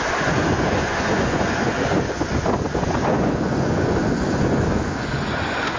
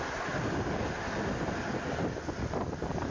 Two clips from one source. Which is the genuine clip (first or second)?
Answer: second